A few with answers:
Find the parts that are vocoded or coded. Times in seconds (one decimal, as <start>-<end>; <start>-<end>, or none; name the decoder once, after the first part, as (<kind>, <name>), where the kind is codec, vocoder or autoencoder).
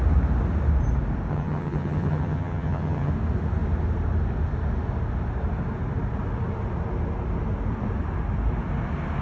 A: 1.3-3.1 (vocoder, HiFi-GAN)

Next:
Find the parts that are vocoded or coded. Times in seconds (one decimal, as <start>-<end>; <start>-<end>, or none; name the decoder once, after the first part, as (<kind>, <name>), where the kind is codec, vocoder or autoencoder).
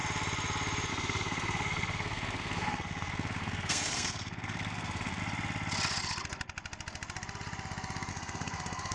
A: 0.9-5.2 (codec, SNAC); 8.1-8.9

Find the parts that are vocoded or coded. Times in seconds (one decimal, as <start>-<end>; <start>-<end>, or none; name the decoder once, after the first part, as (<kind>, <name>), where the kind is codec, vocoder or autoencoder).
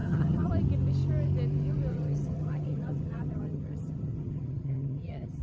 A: 0.0-0.5 (vocoder, HiFi-GAN); 1.9-5.4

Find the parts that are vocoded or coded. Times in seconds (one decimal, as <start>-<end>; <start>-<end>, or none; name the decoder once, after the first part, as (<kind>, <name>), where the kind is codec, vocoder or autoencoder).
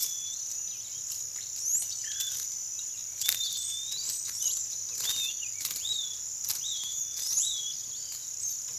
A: 3.0-4.6 (vocoder, BigVGAN v2); 6.5-7.0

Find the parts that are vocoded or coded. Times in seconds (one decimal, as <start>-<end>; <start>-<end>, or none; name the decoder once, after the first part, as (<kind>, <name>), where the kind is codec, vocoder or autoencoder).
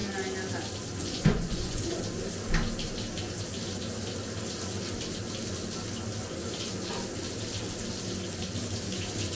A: 1.0-2.0 (vocoder, Vocos)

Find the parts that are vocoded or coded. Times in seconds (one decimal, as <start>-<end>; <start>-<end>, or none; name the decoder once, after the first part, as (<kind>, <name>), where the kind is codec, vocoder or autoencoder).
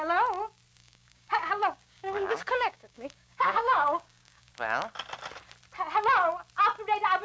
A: 0.8-4.5 (codec, DAC)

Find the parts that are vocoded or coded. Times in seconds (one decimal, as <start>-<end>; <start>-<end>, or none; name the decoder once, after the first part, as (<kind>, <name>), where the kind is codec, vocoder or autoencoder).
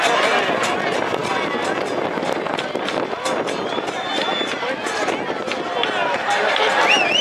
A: 6.2-6.7 (vocoder, BigVGAN v2)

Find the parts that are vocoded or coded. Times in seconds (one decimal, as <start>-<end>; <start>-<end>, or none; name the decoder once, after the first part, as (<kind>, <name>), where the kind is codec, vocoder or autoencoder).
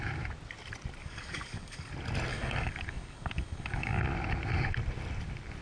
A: 1.0-1.9 (codec, DAC); 2.3-4.0